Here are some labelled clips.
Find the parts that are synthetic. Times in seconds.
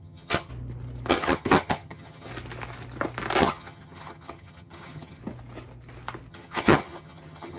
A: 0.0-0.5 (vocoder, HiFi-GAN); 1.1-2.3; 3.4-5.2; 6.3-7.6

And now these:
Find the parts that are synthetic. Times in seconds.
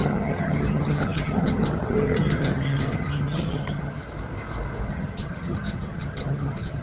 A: 0.0-4.0 (vocoder, HiFi-GAN); 4.9-6.8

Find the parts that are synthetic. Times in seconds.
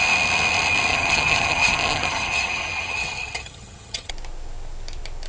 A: 0.9-4.1 (vocoder, HiFi-GAN)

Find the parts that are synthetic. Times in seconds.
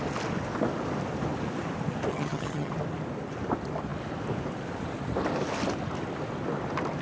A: 2.1-2.7 (vocoder, HiFi-GAN)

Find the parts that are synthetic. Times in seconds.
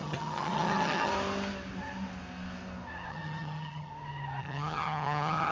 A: 0.0-1.1 (vocoder, HiFi-GAN); 3.1-3.9; 4.4-5.5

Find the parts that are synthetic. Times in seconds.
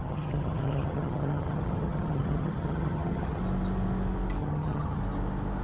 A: 0.0-3.4 (vocoder, HiFi-GAN); 4.4-5.0